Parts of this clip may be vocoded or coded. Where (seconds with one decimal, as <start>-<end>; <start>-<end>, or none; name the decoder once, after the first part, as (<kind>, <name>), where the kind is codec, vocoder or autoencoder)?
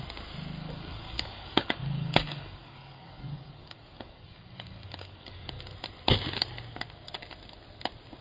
0.6-5.5 (codec, DAC)